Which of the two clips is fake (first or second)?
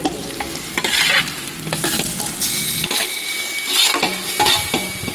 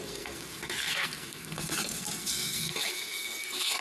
second